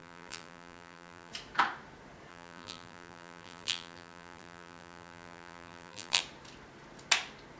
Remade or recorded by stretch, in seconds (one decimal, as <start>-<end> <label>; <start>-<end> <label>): 0.0-1.3 remade; 1.3-2.3 recorded; 2.3-6.2 remade; 6.2-7.6 recorded